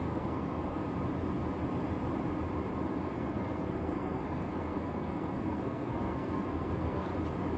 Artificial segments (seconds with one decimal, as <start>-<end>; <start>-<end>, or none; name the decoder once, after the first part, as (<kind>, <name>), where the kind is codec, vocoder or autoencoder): 0.0-0.8 (codec, SNAC); 3.0-7.1